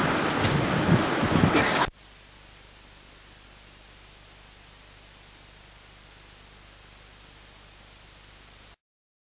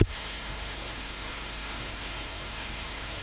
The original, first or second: first